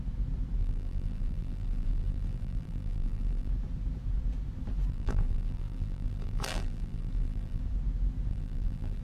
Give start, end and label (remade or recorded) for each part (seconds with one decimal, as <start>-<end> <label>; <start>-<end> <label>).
0.0-0.6 recorded; 0.6-3.5 remade; 3.5-4.9 recorded; 4.9-7.6 remade; 7.6-8.3 recorded; 8.3-9.0 remade